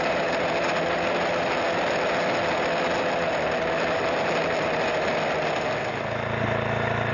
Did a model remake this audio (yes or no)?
no